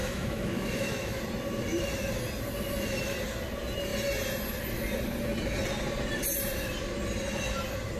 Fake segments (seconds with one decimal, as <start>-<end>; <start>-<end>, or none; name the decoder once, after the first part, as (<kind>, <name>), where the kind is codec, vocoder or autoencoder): 0.0-1.2 (autoencoder, DAC-VAE)

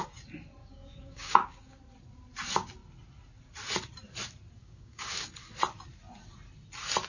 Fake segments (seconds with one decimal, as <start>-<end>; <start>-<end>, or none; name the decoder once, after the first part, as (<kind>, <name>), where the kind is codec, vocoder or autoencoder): 0.6-1.8 (codec, DAC); 4.6-5.3

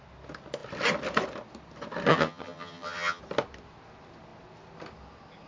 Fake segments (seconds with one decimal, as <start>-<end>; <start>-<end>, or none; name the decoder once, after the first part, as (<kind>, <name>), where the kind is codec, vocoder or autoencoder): 2.1-3.2 (vocoder, HiFi-GAN)

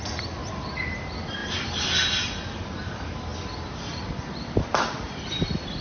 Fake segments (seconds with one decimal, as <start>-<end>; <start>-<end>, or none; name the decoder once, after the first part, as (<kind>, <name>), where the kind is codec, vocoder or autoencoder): none

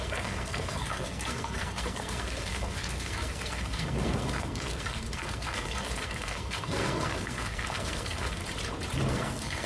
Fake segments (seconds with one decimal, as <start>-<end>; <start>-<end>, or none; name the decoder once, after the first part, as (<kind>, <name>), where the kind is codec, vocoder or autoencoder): 0.0-8.4 (codec, SNAC); 9.1-9.7

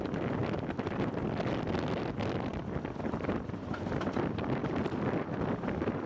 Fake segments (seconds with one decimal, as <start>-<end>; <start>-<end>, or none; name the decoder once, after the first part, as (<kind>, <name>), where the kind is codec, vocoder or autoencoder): 0.0-0.4 (vocoder, BigVGAN v2); 2.0-6.1

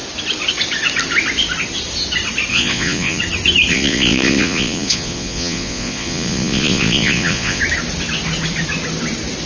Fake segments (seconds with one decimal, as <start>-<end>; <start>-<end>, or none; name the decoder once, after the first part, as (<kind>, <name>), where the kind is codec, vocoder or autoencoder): 2.5-3.2 (vocoder, Vocos); 3.7-7.6